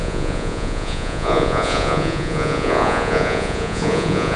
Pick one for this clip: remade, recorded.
remade